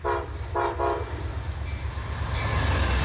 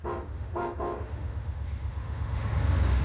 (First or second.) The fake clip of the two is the second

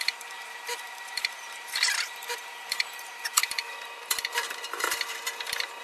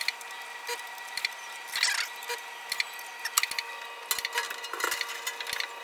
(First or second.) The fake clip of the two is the first